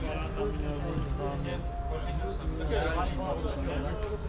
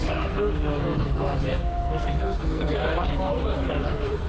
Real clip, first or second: first